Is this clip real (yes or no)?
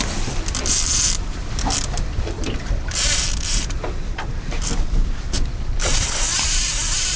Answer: no